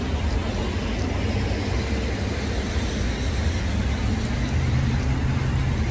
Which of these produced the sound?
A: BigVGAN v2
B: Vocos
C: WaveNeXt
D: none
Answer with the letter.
D